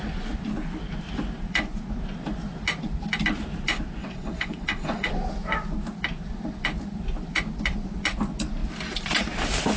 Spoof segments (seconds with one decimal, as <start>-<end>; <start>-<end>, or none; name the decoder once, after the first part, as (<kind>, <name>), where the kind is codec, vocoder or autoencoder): 4.0-5.1 (vocoder, WaveNeXt)